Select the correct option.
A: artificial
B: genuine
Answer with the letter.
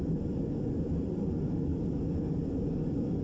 B